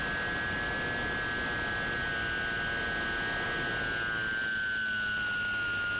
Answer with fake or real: real